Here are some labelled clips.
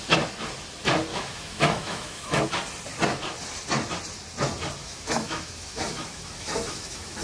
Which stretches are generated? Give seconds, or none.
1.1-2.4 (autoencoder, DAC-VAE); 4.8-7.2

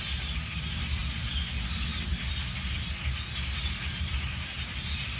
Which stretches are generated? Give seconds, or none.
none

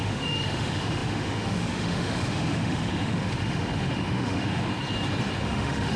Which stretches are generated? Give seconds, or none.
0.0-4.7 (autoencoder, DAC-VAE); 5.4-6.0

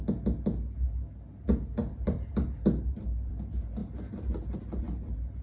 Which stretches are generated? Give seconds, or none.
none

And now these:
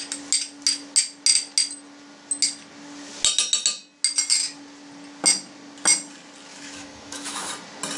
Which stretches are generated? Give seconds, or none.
6.5-7.5 (autoencoder, DAC-VAE)

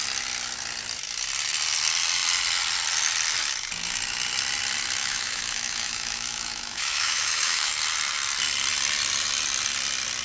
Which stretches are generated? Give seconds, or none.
5.0-7.7 (autoencoder, DAC-VAE)